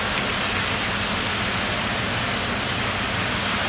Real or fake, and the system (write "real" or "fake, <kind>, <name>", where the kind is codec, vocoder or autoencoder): real